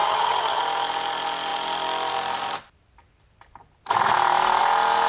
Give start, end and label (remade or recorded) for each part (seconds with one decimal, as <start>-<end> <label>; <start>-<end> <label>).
0.0-0.6 remade; 0.6-5.1 recorded